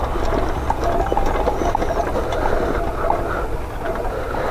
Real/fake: real